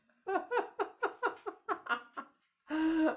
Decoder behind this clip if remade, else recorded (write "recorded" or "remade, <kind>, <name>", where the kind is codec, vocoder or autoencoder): recorded